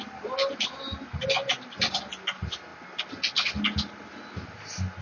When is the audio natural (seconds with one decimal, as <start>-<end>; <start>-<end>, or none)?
0.0-5.0